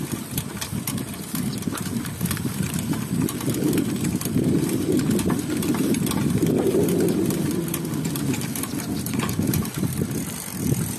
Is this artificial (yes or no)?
no